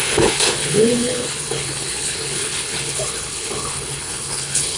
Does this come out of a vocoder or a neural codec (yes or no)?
yes